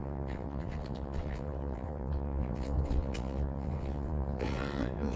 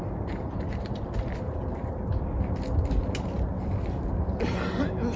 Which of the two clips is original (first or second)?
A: second